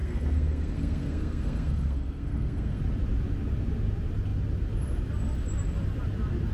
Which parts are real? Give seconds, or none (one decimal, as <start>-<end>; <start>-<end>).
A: 2.8-6.5